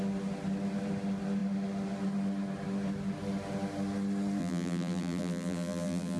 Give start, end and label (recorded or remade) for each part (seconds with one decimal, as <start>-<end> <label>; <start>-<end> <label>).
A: 0.0-4.4 recorded; 4.4-6.2 remade